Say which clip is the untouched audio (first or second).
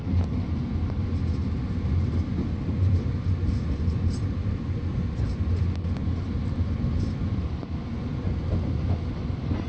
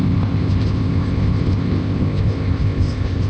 first